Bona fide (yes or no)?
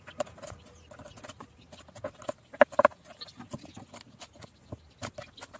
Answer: yes